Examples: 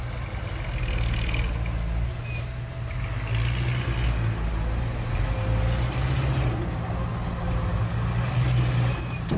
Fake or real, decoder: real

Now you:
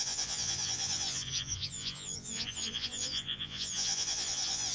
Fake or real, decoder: fake, vocoder, Vocos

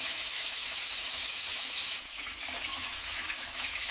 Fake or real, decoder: fake, autoencoder, DAC-VAE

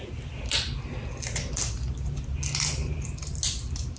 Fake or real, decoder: real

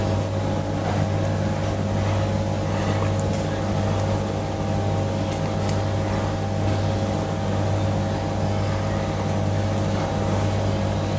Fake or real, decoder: real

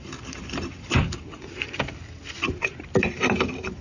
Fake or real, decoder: fake, vocoder, BigVGAN v2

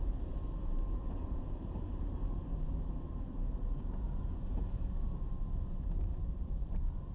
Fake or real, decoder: fake, vocoder, BigVGAN v2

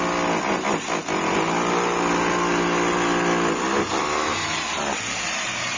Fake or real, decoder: real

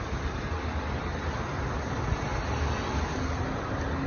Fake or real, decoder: real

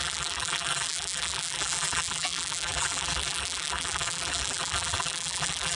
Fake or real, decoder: fake, vocoder, BigVGAN v2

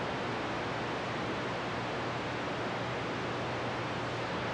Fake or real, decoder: real